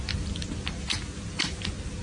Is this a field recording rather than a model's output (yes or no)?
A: yes